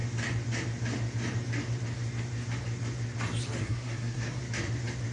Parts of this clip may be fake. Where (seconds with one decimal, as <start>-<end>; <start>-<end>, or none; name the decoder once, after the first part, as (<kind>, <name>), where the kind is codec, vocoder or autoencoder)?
3.6-4.4 (codec, SNAC)